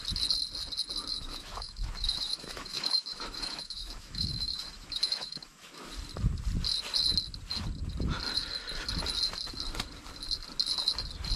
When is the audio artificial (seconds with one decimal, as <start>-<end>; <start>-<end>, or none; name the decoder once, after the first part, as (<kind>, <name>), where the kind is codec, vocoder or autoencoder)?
1.1-5.8 (autoencoder, DAC-VAE)